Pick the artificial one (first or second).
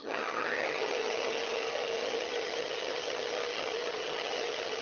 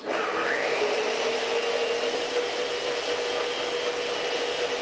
first